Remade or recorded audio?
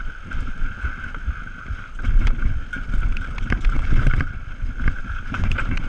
recorded